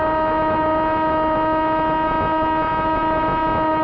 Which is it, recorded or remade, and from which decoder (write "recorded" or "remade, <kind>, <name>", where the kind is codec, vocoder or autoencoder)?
recorded